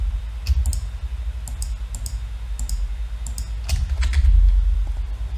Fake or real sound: real